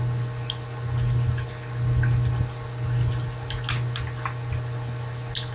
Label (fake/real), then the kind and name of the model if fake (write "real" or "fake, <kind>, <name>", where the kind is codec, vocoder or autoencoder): real